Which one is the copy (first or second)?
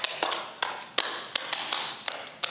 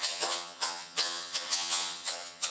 second